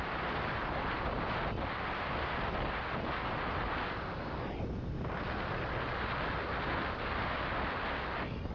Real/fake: real